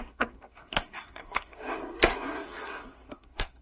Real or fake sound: fake